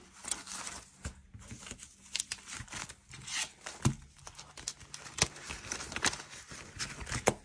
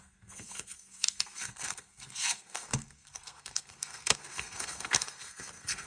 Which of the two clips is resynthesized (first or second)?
second